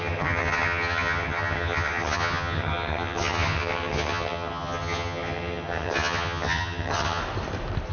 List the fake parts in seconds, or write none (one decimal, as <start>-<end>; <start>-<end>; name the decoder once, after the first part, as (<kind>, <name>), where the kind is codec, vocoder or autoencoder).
0.0-7.2 (vocoder, HiFi-GAN)